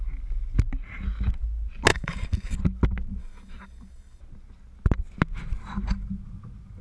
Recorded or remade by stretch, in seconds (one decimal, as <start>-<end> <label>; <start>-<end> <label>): 0.0-1.9 recorded; 1.9-2.6 remade; 2.6-3.2 recorded; 3.2-4.2 remade; 4.2-6.8 recorded